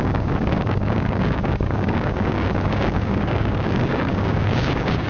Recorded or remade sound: remade